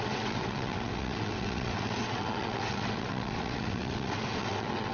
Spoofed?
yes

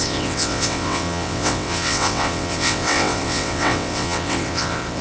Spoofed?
yes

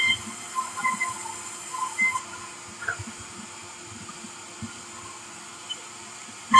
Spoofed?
no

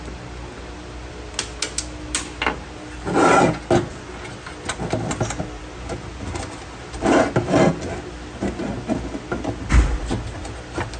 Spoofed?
no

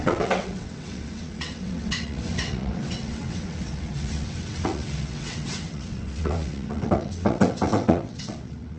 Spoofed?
yes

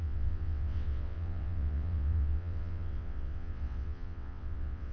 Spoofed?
yes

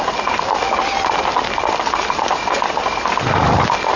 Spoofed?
no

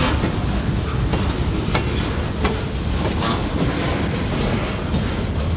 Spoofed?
no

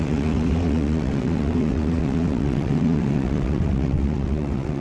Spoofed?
yes